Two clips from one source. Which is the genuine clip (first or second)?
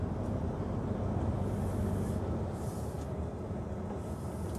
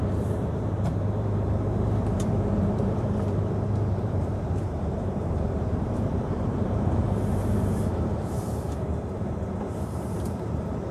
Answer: first